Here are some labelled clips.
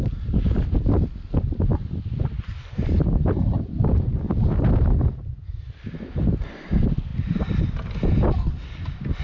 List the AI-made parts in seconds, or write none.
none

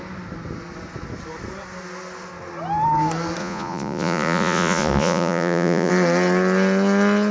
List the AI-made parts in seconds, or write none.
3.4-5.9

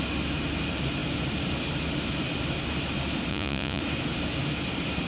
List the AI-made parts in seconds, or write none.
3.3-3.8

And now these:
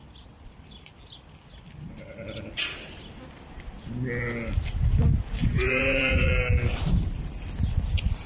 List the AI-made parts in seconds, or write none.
5.4-6.3

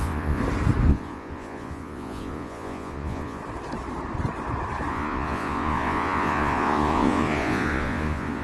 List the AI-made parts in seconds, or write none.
0.0-0.4; 0.9-3.4; 4.9-8.4